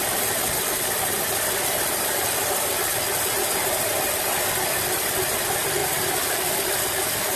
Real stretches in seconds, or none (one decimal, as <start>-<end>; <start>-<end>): none